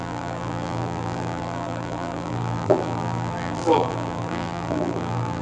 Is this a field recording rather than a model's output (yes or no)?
no